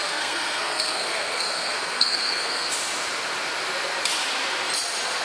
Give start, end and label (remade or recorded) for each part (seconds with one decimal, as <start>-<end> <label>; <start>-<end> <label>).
0.0-2.7 remade; 2.7-5.2 recorded